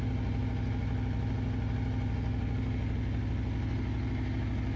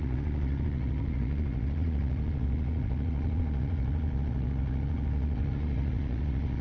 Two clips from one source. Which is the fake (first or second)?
second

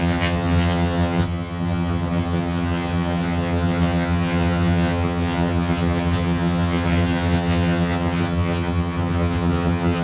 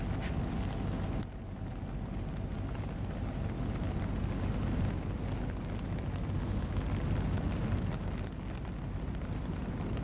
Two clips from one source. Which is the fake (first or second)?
first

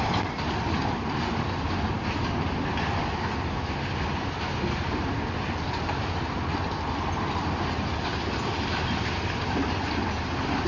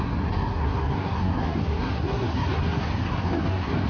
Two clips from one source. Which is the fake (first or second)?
second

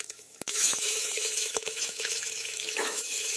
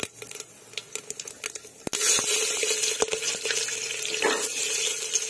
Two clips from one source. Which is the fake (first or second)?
first